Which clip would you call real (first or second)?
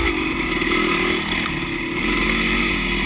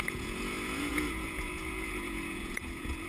first